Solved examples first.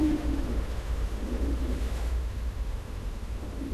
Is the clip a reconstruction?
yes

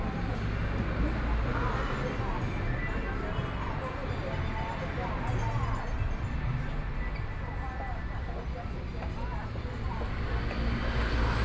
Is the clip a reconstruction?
no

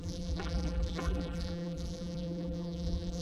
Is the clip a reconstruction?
yes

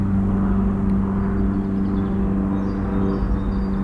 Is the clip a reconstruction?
no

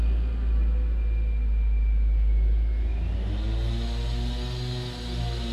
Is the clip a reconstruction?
no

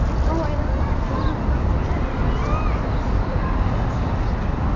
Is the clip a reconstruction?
no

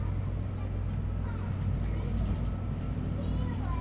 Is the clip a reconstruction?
no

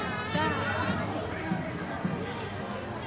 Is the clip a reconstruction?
no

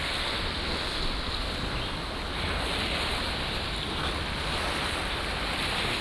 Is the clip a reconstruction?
no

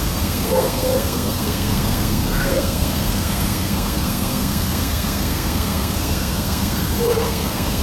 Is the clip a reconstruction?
yes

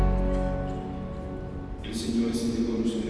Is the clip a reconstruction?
no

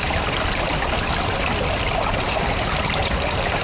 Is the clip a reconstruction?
no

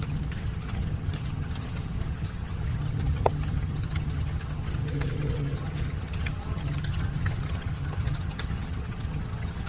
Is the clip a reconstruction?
yes